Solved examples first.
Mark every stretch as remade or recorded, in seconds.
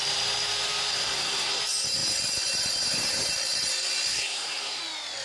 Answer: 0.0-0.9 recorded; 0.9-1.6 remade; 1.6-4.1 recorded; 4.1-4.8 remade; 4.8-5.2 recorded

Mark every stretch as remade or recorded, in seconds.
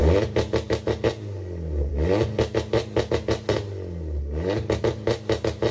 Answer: 0.0-5.7 recorded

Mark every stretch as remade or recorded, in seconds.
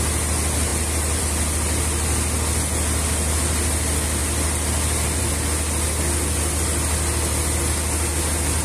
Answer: 0.0-0.7 recorded; 0.7-1.2 remade; 1.2-8.6 recorded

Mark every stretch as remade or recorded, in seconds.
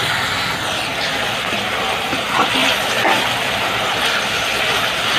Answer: 0.0-5.2 recorded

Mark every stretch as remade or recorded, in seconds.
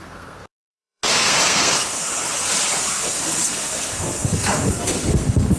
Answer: 0.0-2.1 remade; 2.1-2.8 recorded; 2.8-5.6 remade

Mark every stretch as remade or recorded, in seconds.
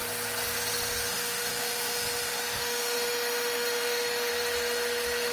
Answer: 0.0-1.1 recorded; 1.1-4.3 remade; 4.3-5.3 recorded